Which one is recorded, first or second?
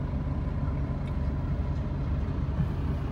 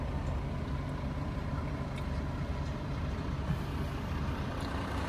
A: first